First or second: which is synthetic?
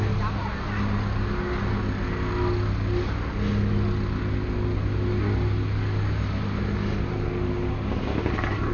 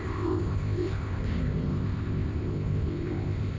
second